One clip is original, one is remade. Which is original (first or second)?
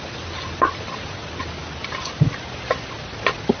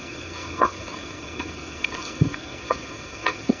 first